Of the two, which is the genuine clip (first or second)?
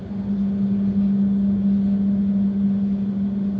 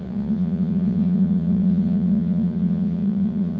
first